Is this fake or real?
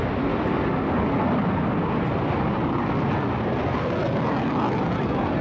real